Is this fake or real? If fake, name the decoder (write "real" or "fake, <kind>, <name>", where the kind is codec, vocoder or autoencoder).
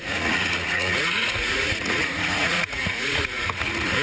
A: fake, vocoder, Vocos